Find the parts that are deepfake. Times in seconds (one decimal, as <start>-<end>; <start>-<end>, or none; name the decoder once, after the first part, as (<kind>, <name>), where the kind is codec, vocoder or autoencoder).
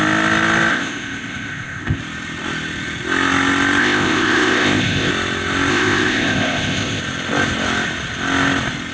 0.7-2.0 (codec, ZipCodec); 3.8-5.1; 5.7-7.0